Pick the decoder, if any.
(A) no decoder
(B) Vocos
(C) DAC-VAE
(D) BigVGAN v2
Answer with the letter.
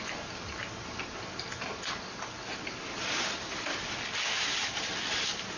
A